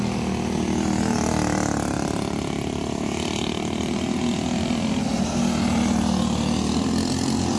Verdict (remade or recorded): recorded